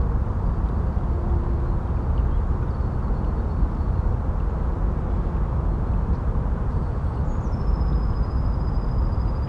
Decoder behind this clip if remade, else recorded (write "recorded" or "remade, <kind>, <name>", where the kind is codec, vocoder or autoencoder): recorded